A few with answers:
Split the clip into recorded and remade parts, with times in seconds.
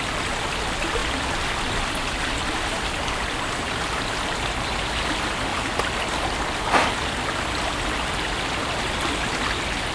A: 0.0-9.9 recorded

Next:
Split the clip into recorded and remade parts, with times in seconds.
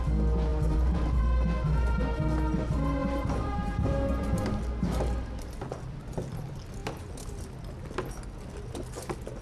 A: 0.0-0.5 recorded; 0.5-1.2 remade; 1.2-3.0 recorded; 3.0-4.6 remade; 4.6-9.4 recorded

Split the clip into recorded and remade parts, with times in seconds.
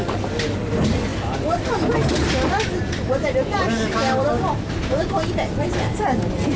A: 0.0-6.6 recorded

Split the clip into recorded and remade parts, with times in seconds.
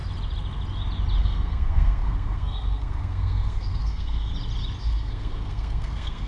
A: 0.0-1.2 recorded; 1.2-4.3 remade; 4.3-4.8 recorded; 4.8-6.3 remade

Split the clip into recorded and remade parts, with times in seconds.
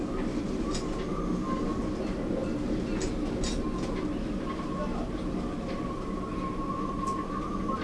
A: 0.0-7.8 recorded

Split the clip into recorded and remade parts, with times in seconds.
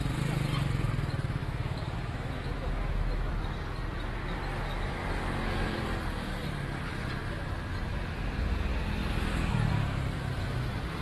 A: 0.0-1.4 recorded; 1.4-3.3 remade; 3.3-11.0 recorded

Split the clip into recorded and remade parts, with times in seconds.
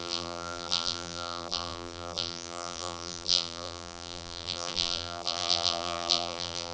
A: 0.0-6.7 remade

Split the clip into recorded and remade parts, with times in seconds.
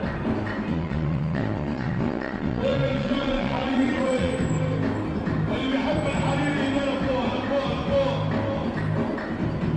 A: 0.0-0.7 recorded; 0.7-4.3 remade; 4.3-9.8 recorded